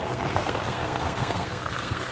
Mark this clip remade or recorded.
remade